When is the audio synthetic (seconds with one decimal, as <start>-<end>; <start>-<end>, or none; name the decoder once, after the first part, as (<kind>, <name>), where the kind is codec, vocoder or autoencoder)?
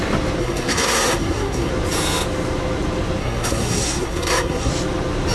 0.4-1.7 (codec, SNAC); 3.2-4.7